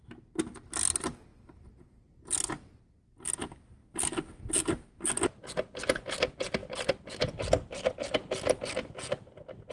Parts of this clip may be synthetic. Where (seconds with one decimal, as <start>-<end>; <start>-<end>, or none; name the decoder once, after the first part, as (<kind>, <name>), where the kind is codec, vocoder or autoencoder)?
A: none